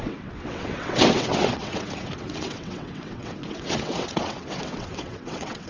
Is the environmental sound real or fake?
fake